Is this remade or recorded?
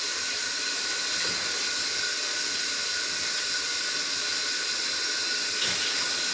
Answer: recorded